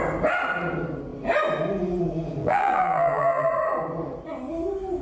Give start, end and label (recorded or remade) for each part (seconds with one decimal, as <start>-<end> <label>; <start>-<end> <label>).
0.0-2.4 recorded; 2.4-3.5 remade; 3.5-5.0 recorded